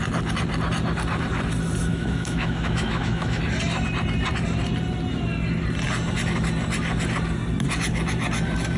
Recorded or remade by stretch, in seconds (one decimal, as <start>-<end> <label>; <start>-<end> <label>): 0.0-1.9 recorded; 1.9-3.4 remade; 3.4-8.8 recorded